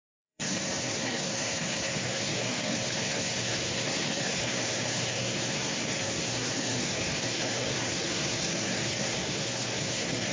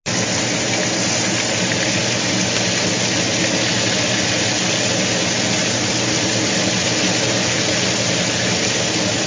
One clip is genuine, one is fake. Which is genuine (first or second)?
second